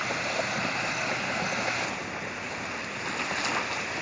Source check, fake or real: real